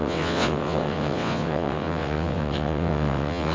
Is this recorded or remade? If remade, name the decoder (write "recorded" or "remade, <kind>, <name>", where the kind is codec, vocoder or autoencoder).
remade, vocoder, WaveNeXt